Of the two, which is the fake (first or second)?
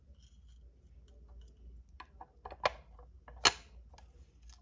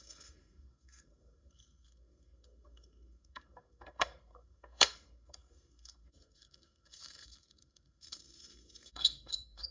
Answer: second